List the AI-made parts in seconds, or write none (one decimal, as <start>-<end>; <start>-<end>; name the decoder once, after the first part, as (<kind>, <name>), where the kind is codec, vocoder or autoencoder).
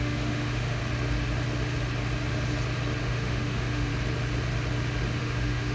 0.0-0.8 (autoencoder, DAC-VAE); 3.0-3.9; 5.2-5.7